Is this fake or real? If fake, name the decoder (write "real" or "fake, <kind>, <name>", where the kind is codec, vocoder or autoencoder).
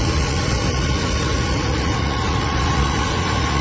fake, vocoder, Vocos